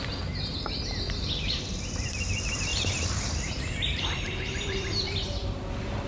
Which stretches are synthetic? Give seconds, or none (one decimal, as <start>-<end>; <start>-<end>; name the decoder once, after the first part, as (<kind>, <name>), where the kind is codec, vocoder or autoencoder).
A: 2.7-5.6 (vocoder, BigVGAN v2)